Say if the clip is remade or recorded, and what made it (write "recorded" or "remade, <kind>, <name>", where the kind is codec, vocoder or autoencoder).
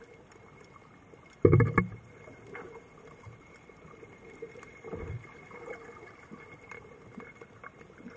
remade, vocoder, BigVGAN v2